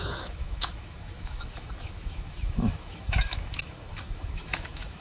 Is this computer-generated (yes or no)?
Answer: yes